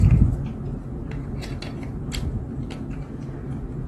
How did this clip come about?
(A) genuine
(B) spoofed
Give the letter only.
A